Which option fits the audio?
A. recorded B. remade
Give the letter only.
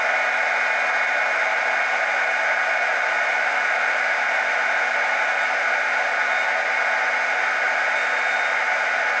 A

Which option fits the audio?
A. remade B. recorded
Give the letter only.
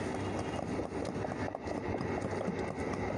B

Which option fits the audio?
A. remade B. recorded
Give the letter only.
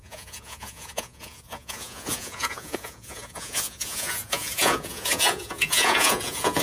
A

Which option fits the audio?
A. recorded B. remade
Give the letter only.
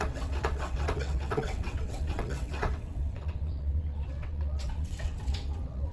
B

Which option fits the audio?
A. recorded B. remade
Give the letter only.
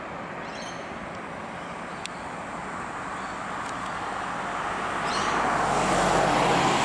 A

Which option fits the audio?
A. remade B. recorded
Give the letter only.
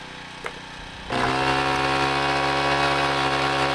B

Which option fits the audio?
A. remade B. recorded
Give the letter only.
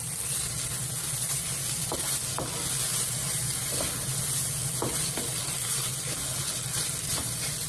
B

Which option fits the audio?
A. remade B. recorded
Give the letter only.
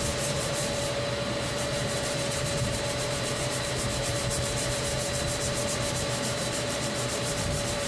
A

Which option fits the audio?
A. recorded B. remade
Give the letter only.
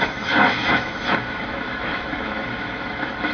B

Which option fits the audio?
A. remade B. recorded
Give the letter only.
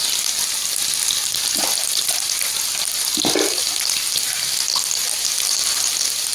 B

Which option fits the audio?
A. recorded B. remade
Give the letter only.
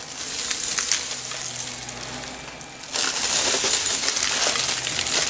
A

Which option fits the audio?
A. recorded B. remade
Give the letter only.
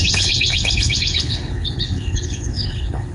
B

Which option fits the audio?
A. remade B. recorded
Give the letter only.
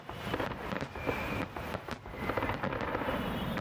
B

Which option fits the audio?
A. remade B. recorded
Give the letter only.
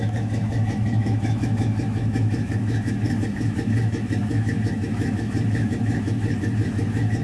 A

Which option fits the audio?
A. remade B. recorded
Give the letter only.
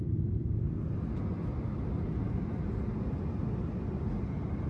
B